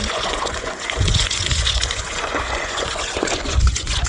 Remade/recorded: remade